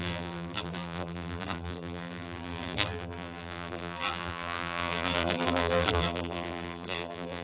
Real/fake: fake